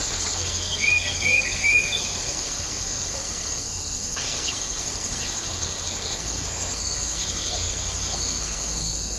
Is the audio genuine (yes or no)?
no